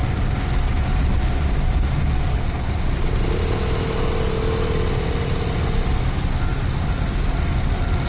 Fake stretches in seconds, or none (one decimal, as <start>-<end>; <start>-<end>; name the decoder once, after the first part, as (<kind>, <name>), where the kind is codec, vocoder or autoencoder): 2.3-2.8 (codec, HILCodec)